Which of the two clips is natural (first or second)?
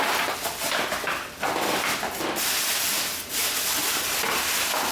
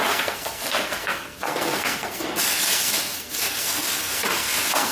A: first